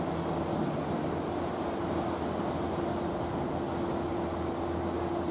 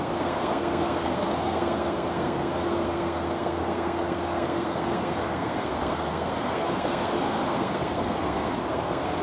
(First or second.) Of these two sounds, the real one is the first